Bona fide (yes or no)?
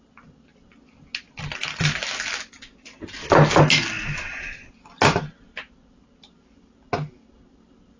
yes